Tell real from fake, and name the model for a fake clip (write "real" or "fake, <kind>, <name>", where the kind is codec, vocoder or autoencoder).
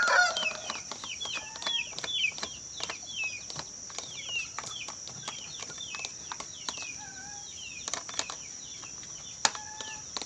real